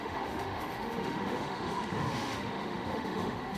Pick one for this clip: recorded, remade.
remade